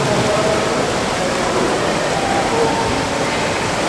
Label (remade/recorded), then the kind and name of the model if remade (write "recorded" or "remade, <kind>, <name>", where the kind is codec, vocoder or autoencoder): remade, vocoder, BigVGAN v2